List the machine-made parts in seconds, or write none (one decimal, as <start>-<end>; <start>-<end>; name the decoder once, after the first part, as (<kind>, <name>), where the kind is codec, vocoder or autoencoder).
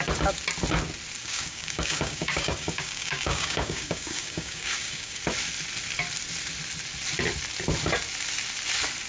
1.2-5.2 (codec, DAC)